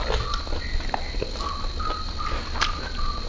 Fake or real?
real